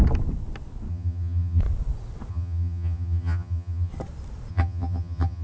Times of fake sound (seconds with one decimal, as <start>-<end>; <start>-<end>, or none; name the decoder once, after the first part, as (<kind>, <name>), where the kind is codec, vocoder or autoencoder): 0.9-1.6 (vocoder, HiFi-GAN); 2.3-3.9; 4.5-5.4

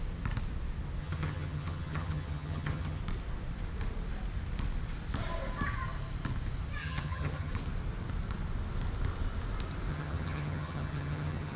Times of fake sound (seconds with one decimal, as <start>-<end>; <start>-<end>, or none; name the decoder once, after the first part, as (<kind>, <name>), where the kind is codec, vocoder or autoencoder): 1.0-3.0 (vocoder, HiFi-GAN); 6.8-7.5; 9.9-11.6

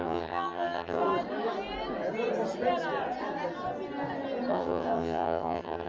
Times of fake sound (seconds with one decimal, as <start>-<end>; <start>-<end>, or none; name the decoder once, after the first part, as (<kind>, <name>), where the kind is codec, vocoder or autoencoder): 0.0-1.0 (vocoder, HiFi-GAN); 4.5-5.9

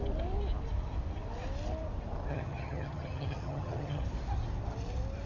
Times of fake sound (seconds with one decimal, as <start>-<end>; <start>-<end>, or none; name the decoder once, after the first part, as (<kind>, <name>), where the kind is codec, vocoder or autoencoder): 2.3-4.0 (vocoder, HiFi-GAN)

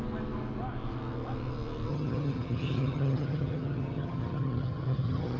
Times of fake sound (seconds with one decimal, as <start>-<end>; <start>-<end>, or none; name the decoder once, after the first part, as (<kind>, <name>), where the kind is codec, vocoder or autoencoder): 1.9-5.4 (vocoder, HiFi-GAN)

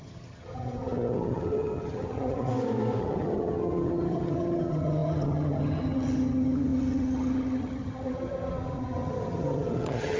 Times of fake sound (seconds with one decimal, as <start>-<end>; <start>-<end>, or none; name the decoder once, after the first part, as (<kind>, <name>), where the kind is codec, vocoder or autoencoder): 0.0-2.5 (vocoder, HiFi-GAN); 3.0-10.2